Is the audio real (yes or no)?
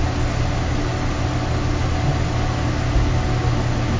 yes